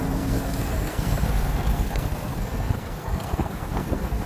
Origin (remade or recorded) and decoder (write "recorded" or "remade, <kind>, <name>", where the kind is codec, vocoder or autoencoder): remade, codec, SNAC